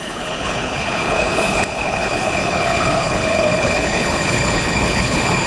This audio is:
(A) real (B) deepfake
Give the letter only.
B